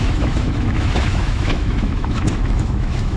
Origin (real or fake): fake